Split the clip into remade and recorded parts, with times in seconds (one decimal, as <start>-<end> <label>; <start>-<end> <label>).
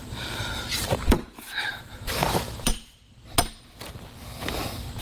0.0-3.0 remade; 3.0-5.0 recorded